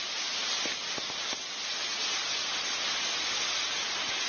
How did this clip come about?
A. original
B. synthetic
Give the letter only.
A